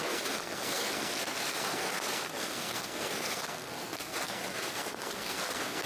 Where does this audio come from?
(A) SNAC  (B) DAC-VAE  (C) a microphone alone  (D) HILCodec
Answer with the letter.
A